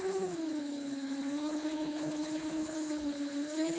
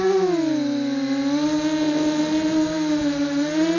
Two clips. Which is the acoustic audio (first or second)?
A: second